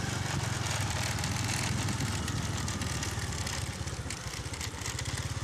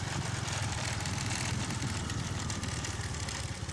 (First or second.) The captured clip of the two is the first